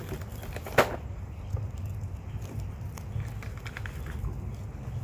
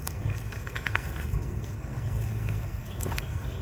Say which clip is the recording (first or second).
first